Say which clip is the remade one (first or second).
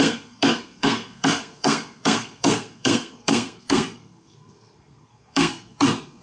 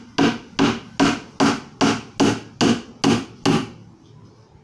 first